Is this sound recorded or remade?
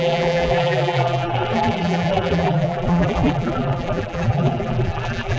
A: remade